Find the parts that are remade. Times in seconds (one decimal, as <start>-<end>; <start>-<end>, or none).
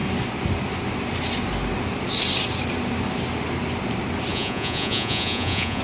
4.3-5.8